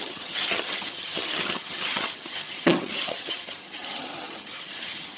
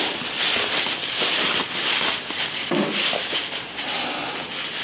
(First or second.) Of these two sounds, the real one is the second